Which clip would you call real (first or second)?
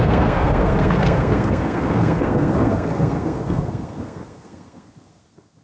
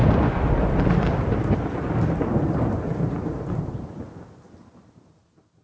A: second